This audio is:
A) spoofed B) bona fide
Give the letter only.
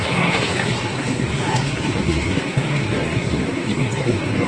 A